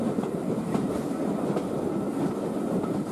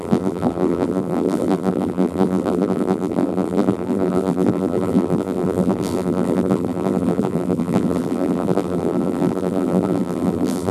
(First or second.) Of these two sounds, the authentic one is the first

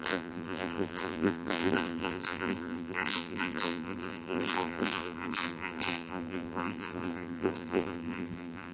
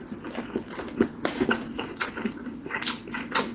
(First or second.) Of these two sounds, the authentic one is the second